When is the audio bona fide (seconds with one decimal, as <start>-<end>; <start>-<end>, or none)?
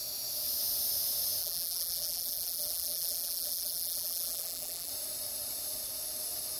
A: 0.0-1.4; 4.9-6.6